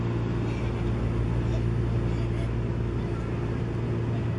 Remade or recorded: recorded